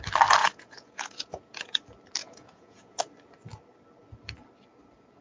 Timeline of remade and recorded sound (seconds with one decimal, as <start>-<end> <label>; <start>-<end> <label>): 0.0-0.4 recorded; 0.4-1.8 remade; 1.8-2.2 recorded; 2.2-3.0 remade; 3.0-5.2 recorded